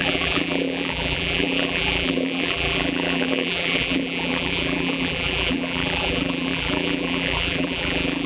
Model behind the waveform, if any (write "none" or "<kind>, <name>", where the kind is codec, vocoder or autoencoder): vocoder, BigVGAN v2